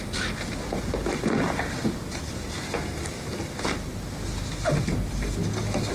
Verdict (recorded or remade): recorded